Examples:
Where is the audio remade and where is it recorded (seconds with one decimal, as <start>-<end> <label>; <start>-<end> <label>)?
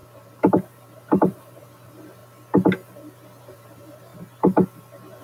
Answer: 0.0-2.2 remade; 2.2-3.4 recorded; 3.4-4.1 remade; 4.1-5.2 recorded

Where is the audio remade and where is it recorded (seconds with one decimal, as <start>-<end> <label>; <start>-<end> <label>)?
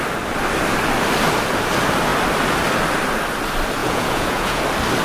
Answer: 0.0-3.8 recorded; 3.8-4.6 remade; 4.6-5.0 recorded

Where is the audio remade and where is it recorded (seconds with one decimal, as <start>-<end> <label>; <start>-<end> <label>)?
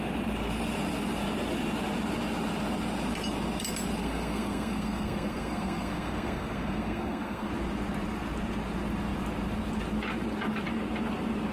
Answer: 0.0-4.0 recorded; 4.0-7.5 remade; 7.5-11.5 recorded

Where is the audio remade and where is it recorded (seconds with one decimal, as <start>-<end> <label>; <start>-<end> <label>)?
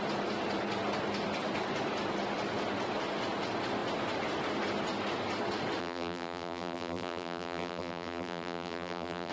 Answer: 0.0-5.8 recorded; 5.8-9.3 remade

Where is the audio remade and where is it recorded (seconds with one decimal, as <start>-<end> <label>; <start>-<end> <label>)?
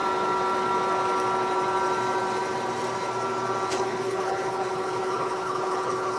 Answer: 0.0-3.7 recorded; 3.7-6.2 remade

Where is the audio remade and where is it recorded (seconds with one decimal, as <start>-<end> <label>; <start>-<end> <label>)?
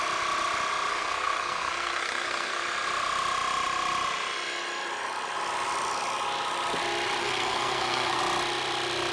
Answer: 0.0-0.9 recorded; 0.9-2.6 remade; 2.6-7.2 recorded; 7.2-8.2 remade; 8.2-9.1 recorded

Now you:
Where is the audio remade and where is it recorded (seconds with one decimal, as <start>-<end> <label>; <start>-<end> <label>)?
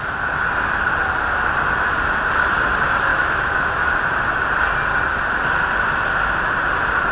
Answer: 0.0-3.1 recorded; 3.1-3.9 remade; 3.9-7.1 recorded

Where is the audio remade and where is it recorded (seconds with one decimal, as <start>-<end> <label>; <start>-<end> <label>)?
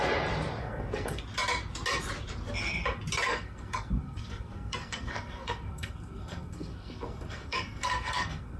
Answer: 0.0-0.6 recorded; 0.6-1.2 remade; 1.2-3.3 recorded; 3.3-8.6 remade